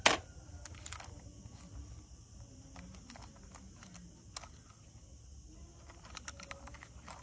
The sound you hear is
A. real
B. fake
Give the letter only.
A